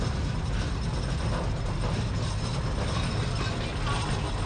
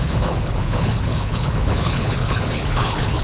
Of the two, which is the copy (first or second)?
second